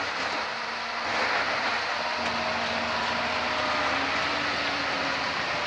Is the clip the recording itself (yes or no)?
yes